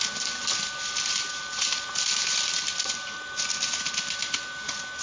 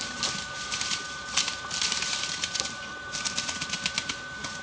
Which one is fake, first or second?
second